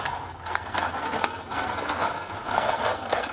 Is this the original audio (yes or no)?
no